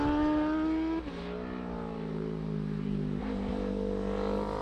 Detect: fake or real real